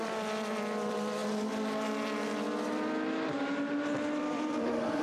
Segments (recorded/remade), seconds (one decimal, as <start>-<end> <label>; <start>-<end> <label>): 0.0-1.2 remade; 1.2-4.2 recorded; 4.2-5.0 remade